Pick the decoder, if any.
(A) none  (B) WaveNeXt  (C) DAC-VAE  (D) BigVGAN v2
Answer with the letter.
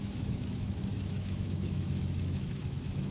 C